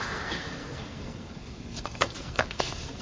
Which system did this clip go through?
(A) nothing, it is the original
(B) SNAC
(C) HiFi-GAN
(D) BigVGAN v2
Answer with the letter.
B